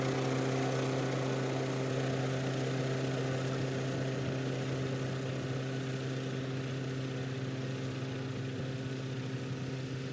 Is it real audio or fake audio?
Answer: real